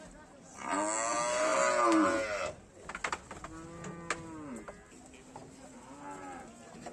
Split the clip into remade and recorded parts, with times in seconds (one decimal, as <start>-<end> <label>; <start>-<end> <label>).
0.0-6.9 recorded